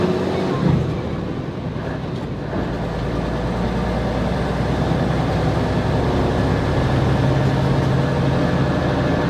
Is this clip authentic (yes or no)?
yes